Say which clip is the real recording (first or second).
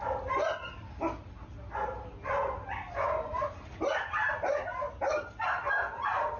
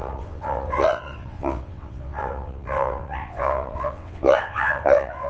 first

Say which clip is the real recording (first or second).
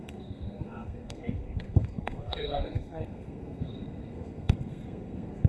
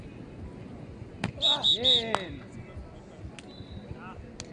second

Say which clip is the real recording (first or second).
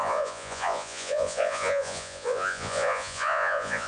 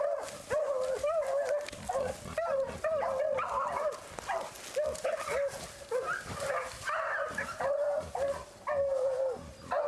second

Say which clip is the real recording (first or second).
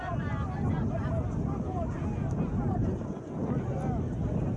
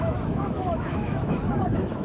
first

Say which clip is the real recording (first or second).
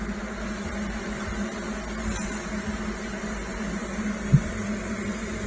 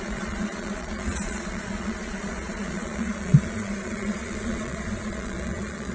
first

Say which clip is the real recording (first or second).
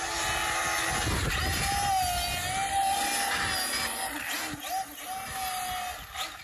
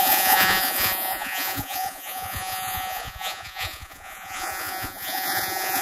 first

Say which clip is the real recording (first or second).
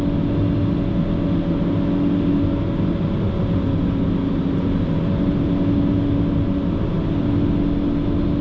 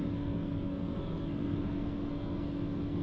first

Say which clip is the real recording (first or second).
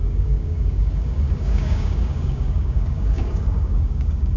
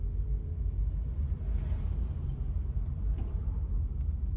second